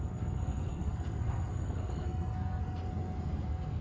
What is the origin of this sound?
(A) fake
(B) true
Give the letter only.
A